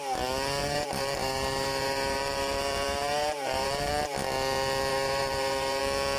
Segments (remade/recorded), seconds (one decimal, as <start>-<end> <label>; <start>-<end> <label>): 0.0-0.6 recorded; 0.6-3.9 remade; 3.9-4.9 recorded; 4.9-5.8 remade; 5.8-6.2 recorded